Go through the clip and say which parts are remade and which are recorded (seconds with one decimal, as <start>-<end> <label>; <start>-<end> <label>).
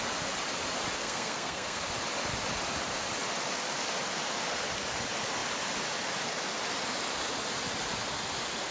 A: 0.0-1.0 recorded; 1.0-1.8 remade; 1.8-8.7 recorded